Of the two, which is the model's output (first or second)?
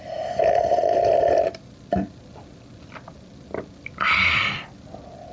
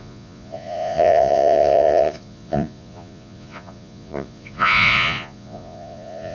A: second